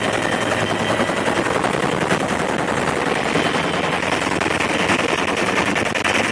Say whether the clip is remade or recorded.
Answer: recorded